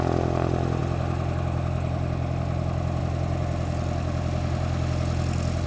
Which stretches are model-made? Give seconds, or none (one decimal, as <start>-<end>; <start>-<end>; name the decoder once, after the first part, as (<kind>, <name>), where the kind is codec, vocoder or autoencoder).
none